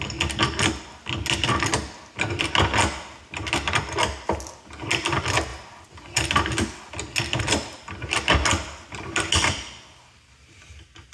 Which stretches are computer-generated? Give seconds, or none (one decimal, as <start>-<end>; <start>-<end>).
none

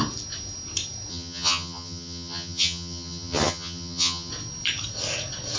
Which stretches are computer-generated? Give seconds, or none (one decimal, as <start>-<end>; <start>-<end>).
1.1-4.3

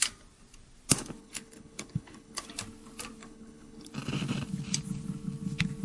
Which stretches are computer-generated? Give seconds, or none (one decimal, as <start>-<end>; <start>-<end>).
1.2-2.4; 3.2-3.9

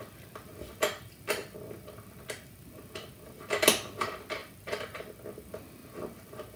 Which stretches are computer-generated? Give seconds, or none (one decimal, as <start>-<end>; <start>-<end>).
4.4-5.0

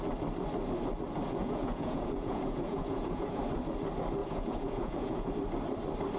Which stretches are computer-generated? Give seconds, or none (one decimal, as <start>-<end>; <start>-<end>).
1.4-3.4; 4.2-5.3

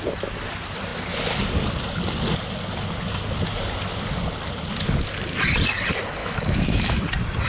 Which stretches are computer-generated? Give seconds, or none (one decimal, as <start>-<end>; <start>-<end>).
6.2-7.0

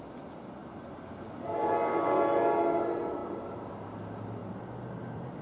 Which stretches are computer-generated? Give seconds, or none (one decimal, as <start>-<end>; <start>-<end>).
0.6-1.7; 3.2-3.7; 4.4-5.4

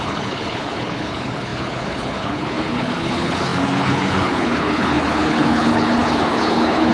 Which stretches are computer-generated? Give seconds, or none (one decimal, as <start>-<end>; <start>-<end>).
0.0-6.9